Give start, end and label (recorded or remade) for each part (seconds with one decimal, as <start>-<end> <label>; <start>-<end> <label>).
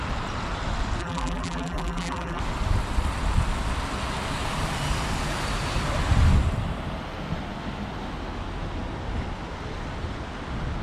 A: 0.0-1.0 recorded; 1.0-2.4 remade; 2.4-10.8 recorded